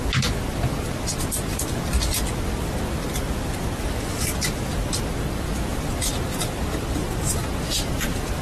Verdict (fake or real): real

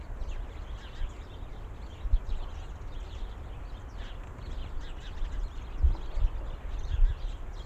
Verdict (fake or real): fake